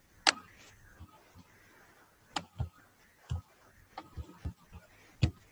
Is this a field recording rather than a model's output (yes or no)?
yes